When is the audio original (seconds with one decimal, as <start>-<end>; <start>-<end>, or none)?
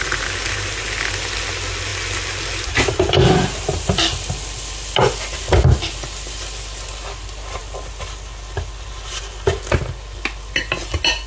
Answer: 0.0-11.3